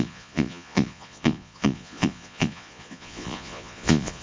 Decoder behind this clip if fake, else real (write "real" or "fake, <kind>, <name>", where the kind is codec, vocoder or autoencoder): fake, vocoder, Vocos